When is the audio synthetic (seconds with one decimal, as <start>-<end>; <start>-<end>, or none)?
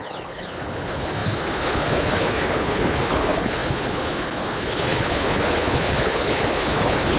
0.0-7.2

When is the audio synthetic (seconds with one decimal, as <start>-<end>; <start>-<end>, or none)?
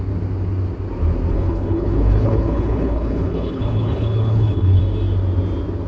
1.3-4.8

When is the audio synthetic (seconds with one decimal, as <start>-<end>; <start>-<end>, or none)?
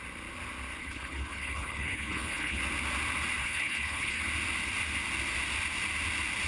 0.8-2.6; 3.4-4.2